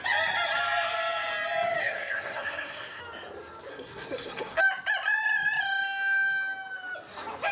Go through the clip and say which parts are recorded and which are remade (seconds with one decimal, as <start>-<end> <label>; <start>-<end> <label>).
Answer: 0.0-1.8 recorded; 1.8-3.0 remade; 3.0-3.7 recorded; 3.7-4.6 remade; 4.6-7.5 recorded